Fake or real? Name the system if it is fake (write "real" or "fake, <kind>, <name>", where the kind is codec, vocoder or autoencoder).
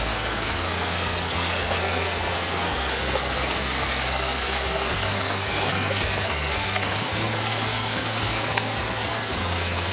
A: fake, codec, SNAC